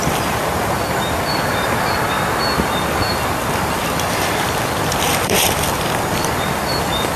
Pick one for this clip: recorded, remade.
remade